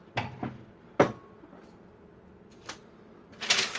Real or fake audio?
real